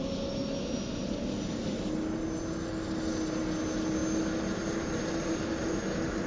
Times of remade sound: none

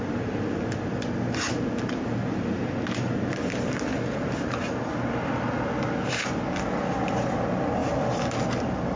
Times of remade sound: none